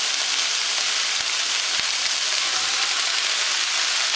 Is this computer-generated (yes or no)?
no